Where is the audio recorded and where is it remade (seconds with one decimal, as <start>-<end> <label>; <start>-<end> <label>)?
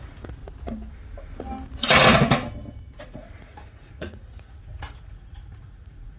0.0-0.4 remade; 0.4-3.0 recorded; 3.0-6.2 remade